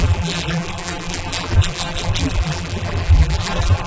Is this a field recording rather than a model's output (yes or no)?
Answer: no